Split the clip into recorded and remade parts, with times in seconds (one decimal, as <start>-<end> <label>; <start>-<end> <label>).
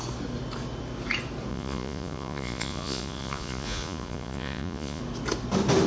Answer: 0.0-1.5 recorded; 1.5-5.0 remade; 5.0-5.9 recorded